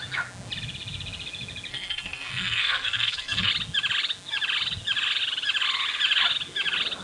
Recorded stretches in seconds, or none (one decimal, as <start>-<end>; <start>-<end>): 0.0-1.7; 3.5-7.0